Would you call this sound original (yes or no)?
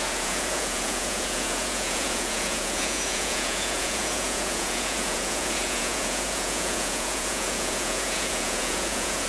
no